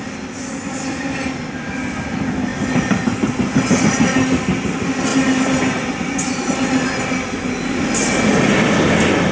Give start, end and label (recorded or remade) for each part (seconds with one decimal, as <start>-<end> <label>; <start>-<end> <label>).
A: 0.0-9.3 recorded